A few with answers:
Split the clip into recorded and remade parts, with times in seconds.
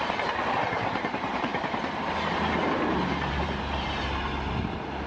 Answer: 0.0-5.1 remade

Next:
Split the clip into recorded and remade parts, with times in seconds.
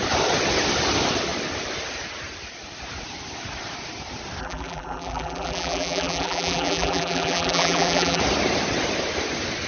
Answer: 0.0-4.4 recorded; 4.4-8.2 remade; 8.2-9.7 recorded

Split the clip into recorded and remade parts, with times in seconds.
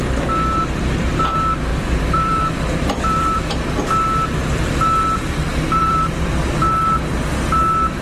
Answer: 0.0-0.6 recorded; 0.6-1.1 remade; 1.1-1.7 recorded; 1.7-3.4 remade; 3.4-5.5 recorded; 5.5-6.3 remade; 6.3-8.0 recorded